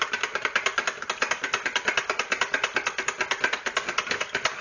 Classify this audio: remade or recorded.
recorded